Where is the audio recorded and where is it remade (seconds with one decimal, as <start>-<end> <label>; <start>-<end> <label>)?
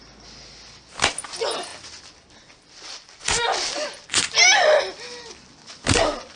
0.0-1.7 recorded; 1.7-5.3 remade; 5.3-6.4 recorded